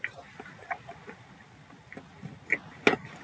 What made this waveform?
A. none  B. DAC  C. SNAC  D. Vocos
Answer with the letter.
A